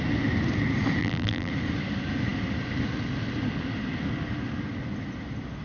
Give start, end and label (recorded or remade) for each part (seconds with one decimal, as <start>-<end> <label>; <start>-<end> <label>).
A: 0.0-1.0 recorded; 1.0-1.5 remade; 1.5-5.6 recorded